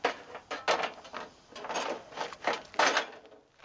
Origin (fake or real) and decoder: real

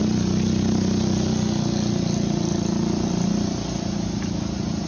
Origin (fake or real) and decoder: real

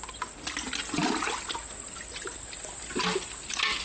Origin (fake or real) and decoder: real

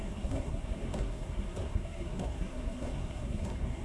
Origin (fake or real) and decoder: fake, codec, SNAC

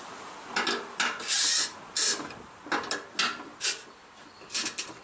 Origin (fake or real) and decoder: real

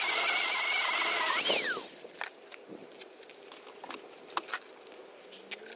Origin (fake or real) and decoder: real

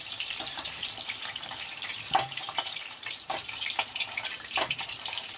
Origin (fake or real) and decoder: fake, vocoder, BigVGAN v2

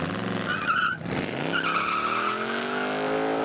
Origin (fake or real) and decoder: real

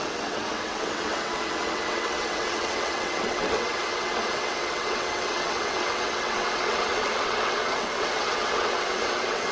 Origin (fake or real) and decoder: fake, vocoder, WaveNeXt